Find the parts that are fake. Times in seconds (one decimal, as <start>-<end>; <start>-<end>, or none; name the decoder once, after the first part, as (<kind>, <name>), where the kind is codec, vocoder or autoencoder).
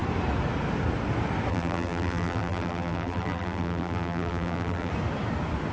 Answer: 1.5-4.9 (vocoder, BigVGAN v2)